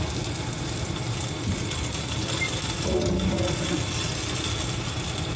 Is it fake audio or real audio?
real